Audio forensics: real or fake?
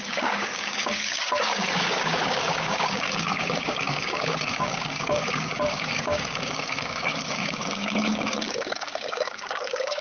fake